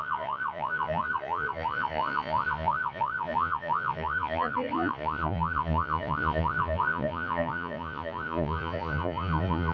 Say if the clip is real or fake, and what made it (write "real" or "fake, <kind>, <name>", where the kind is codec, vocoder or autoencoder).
fake, vocoder, Vocos